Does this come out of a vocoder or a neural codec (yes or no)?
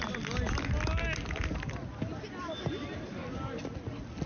no